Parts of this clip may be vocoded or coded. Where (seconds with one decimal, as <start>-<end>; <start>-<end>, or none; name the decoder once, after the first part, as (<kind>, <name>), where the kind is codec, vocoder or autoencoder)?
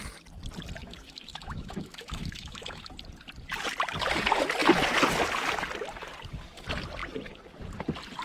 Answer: 0.8-2.8 (autoencoder, DAC-VAE)